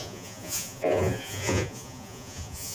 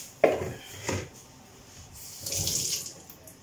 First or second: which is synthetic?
first